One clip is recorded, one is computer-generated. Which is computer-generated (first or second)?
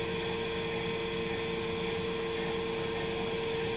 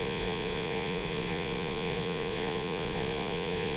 second